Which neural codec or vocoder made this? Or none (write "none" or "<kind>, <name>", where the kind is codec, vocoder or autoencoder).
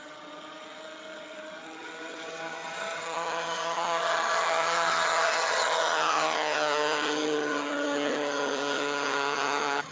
vocoder, HiFi-GAN